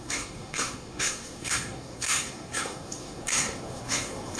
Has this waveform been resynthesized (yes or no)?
yes